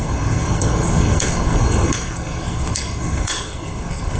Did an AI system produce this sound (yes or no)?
yes